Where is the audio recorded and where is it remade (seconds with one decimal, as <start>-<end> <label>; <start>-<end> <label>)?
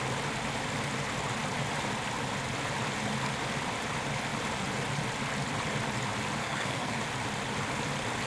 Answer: 0.0-6.4 recorded; 6.4-7.0 remade; 7.0-8.3 recorded